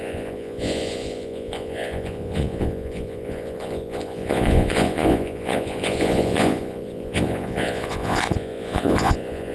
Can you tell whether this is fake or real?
fake